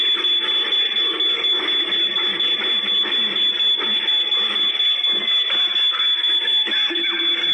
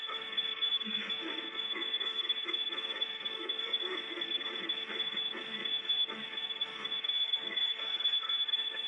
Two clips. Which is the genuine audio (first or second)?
first